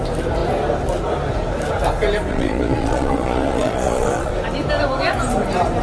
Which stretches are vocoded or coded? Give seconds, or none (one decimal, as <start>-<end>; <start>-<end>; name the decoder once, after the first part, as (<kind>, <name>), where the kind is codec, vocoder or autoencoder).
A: 2.3-4.3 (vocoder, Vocos)